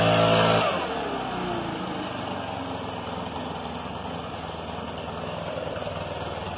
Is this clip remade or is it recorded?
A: recorded